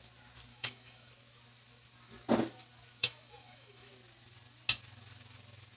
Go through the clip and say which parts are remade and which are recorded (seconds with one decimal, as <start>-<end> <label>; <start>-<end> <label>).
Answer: 0.0-0.5 recorded; 0.5-1.1 remade; 1.1-3.0 recorded; 3.0-3.9 remade; 3.9-5.8 recorded